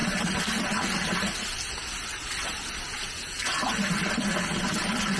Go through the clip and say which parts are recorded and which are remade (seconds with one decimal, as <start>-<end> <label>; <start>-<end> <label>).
0.0-5.2 recorded